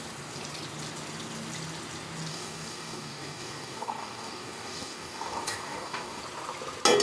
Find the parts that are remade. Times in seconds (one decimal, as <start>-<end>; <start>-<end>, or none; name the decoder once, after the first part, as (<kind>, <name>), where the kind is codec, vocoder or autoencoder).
2.3-6.2 (codec, DAC)